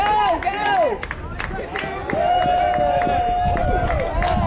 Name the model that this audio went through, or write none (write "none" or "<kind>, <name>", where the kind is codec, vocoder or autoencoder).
none